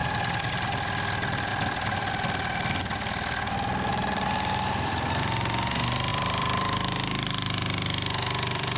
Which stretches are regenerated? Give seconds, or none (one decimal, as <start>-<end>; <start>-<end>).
0.0-0.5; 1.5-2.1; 3.9-5.2; 6.1-8.8